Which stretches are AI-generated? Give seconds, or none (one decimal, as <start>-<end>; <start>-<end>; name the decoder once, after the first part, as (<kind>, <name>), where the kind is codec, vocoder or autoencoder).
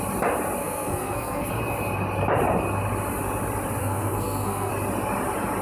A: 0.6-1.5 (codec, SNAC); 3.8-4.7